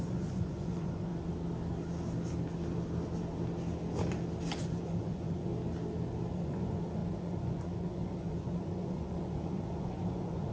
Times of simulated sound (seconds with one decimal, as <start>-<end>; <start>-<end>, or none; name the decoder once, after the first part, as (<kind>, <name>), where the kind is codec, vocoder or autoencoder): 0.0-1.1 (vocoder, Vocos); 4.6-5.5; 6.3-10.5